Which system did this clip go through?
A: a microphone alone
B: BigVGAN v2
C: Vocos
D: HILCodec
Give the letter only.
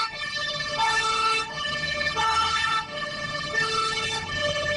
D